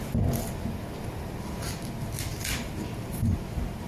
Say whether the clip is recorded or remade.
recorded